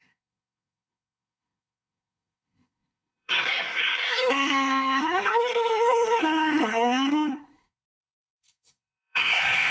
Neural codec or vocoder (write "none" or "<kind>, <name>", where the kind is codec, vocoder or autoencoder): codec, SNAC